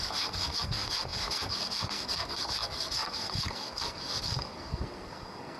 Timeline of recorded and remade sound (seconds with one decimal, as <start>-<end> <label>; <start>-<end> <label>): 0.0-5.6 remade